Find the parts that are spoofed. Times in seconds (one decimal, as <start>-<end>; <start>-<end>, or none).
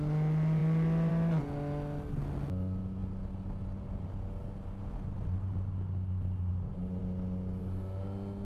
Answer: none